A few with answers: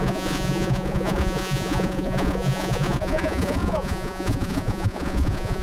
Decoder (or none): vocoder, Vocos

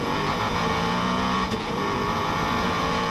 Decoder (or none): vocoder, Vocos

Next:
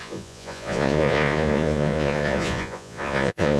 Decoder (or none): vocoder, Vocos